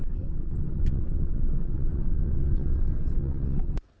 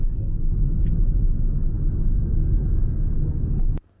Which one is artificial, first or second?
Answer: first